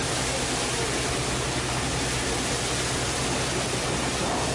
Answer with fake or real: real